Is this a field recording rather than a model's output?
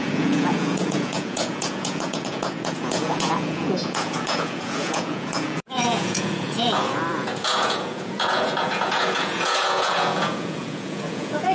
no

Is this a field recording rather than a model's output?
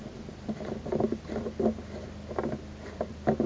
yes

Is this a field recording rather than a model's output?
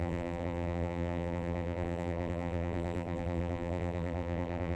no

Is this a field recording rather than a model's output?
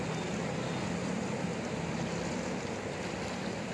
yes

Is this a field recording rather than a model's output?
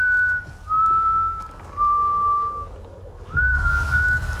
no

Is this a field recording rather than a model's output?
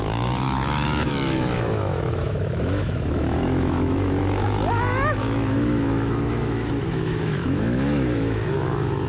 no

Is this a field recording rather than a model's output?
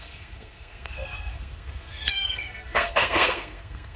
no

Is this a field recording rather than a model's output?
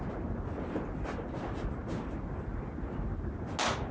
yes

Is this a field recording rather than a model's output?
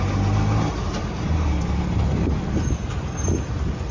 yes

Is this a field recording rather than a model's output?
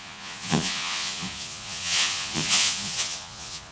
no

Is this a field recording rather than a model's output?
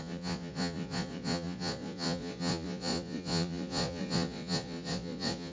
no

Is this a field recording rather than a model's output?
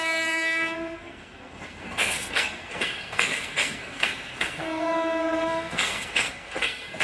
no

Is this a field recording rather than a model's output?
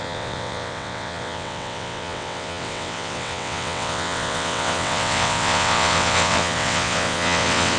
no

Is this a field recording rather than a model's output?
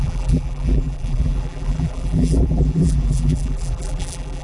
no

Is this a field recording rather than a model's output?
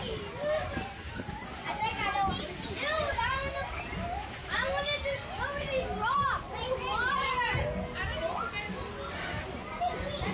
yes